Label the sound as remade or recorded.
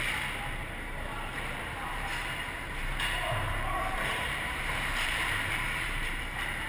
remade